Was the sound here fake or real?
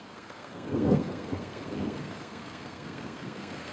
fake